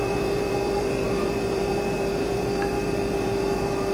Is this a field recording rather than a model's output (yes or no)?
no